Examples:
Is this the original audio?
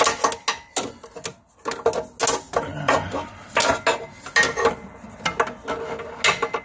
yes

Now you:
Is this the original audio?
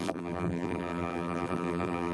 no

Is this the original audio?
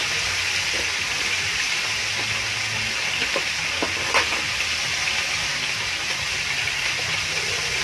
yes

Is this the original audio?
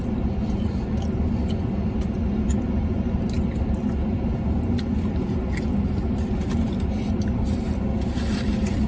yes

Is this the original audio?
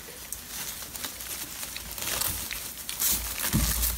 yes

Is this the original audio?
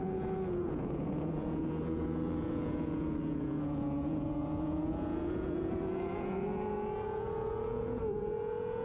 no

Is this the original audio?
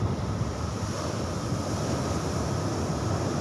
yes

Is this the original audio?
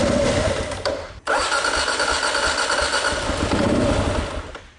no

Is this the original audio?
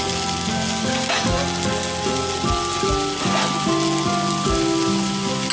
yes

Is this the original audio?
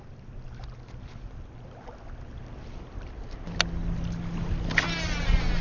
yes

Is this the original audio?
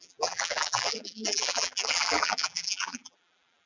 no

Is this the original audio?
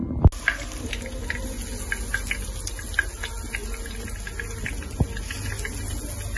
yes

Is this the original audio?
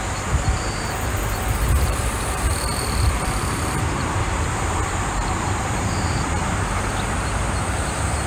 no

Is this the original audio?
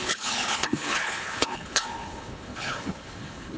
no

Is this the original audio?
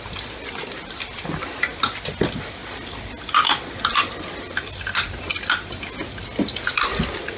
yes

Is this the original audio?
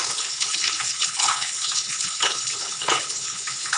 no